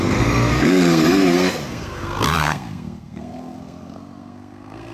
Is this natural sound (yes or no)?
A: no